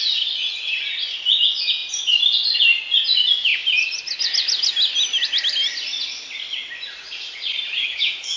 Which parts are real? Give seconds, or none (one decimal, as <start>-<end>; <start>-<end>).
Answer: 0.0-7.8